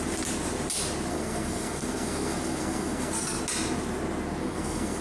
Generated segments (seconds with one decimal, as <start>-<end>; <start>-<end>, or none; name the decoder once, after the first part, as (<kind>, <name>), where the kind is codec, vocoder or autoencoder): 1.1-3.4 (codec, SNAC); 4.4-5.0